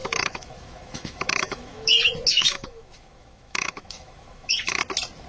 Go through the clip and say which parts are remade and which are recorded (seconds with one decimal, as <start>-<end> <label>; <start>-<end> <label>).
0.0-1.9 remade; 1.9-2.3 recorded; 2.3-4.8 remade; 4.8-5.3 recorded